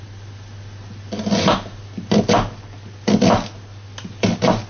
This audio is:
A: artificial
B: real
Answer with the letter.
B